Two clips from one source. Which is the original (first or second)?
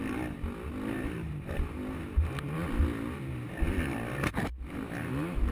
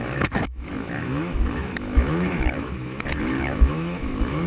first